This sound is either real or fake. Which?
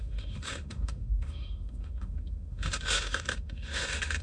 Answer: fake